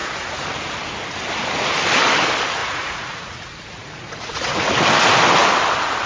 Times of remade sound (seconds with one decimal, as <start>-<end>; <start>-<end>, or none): 0.0-0.5; 2.6-4.7